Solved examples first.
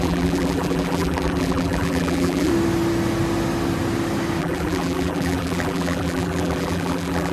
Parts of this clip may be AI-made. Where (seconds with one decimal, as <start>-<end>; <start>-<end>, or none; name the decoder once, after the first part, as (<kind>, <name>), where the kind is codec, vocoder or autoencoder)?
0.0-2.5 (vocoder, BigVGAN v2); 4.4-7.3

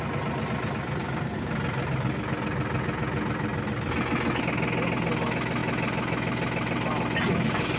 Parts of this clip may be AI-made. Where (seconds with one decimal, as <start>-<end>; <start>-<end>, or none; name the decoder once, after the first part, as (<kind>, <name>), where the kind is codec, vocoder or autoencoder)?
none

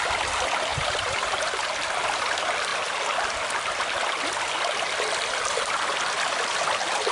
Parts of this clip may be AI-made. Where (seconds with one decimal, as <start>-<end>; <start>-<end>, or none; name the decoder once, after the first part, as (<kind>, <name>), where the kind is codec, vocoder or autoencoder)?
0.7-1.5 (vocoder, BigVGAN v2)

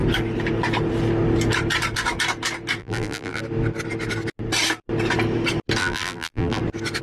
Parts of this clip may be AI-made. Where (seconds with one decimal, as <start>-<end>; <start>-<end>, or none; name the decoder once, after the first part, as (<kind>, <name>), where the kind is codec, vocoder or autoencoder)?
2.8-3.4 (vocoder, BigVGAN v2); 5.8-6.6